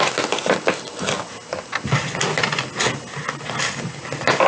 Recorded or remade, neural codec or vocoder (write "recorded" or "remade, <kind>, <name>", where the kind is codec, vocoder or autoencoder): recorded